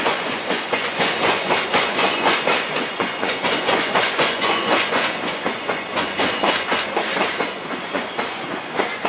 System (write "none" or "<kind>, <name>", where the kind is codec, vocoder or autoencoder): vocoder, Vocos